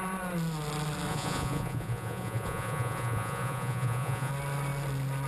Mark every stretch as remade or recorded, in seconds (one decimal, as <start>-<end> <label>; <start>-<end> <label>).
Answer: 0.0-1.1 recorded; 1.1-4.3 remade; 4.3-5.3 recorded

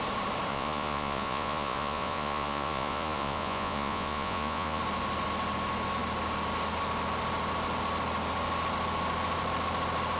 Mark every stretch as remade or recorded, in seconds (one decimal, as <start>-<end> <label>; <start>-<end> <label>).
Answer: 0.0-0.5 recorded; 0.5-4.8 remade; 4.8-10.2 recorded

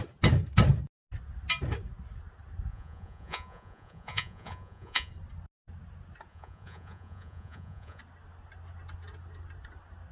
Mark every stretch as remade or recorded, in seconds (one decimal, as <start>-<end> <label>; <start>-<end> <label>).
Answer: 0.0-2.7 recorded; 2.7-5.1 remade; 5.1-6.3 recorded; 6.3-8.0 remade; 8.0-10.1 recorded